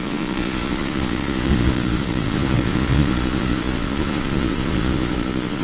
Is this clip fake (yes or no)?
yes